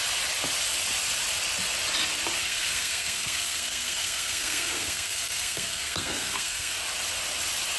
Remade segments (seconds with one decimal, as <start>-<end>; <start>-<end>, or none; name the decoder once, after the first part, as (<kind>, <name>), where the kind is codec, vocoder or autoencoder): 2.4-6.8 (codec, SNAC)